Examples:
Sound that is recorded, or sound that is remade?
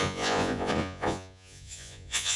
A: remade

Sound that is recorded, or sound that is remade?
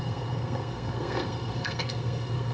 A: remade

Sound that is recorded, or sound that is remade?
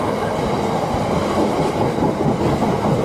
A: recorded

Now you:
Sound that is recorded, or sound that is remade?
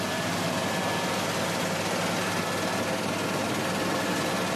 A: recorded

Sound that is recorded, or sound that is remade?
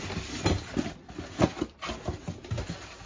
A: recorded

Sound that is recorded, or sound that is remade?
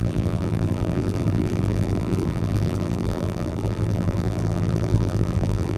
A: remade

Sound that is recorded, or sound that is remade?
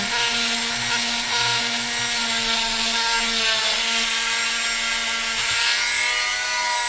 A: recorded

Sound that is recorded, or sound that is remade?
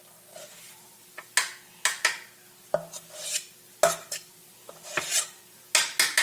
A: recorded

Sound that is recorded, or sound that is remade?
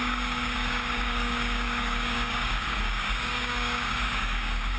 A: remade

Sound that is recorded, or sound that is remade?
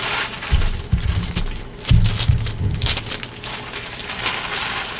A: recorded